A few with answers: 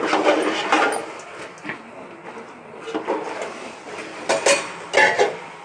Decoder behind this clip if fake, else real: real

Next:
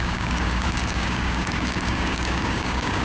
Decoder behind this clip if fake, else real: fake, codec, DAC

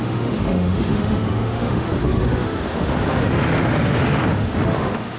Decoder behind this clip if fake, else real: fake, autoencoder, DAC-VAE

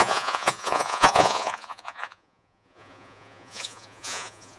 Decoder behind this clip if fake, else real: fake, vocoder, Vocos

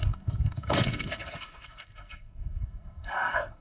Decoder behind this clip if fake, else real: fake, codec, SNAC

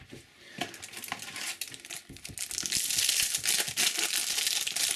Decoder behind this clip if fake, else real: real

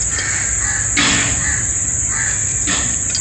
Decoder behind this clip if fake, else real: real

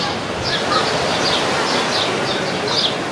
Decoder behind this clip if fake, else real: real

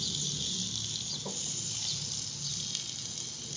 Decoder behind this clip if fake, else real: real